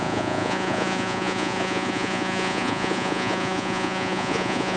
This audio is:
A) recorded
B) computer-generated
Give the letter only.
B